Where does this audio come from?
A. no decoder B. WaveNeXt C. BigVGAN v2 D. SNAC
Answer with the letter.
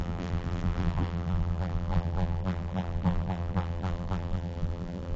C